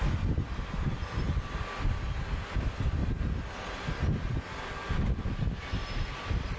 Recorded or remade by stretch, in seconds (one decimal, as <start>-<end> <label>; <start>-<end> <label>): 0.0-6.6 recorded